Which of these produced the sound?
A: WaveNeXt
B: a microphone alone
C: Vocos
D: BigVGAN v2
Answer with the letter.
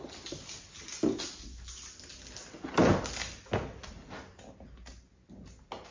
B